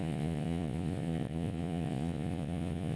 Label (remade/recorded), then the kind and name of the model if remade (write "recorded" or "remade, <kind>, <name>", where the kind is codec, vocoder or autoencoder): remade, vocoder, Vocos